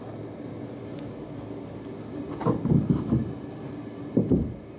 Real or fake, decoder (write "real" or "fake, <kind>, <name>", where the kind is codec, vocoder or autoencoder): real